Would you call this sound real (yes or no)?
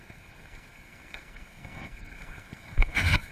no